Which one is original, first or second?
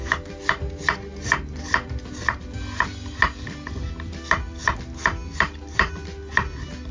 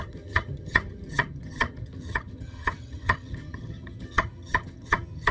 first